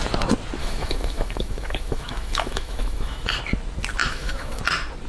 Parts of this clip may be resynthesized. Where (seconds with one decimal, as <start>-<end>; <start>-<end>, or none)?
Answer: 0.6-3.4; 4.0-4.6